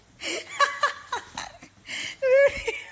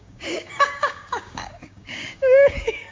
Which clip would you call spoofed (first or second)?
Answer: second